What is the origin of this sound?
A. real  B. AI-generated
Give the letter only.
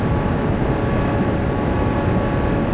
A